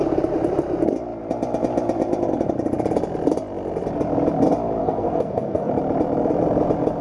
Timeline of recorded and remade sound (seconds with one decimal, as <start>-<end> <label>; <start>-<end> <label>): 0.0-4.8 recorded; 4.8-5.7 remade; 5.7-7.0 recorded